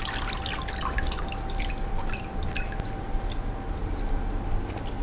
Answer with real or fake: real